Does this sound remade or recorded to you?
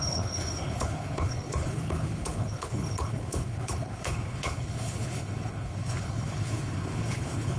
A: remade